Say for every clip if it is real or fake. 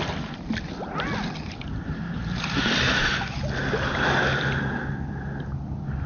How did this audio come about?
real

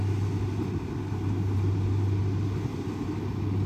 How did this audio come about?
real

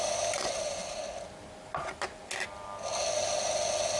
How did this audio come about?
real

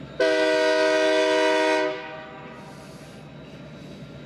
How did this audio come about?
real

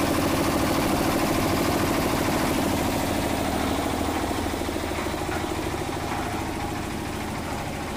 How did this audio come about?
real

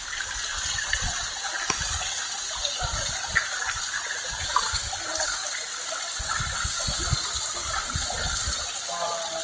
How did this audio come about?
real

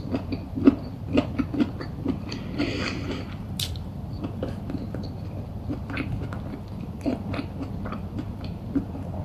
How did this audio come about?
real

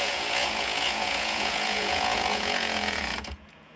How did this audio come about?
fake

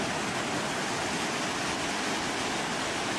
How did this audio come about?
real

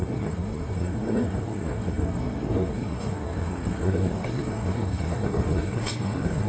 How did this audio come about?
fake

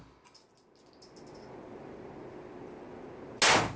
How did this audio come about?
real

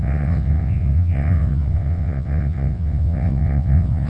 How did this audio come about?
fake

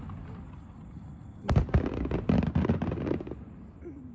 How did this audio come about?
real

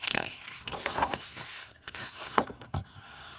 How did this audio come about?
fake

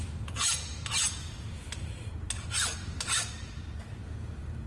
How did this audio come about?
real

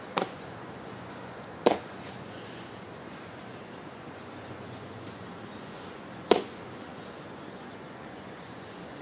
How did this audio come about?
fake